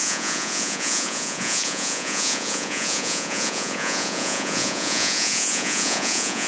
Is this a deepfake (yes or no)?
yes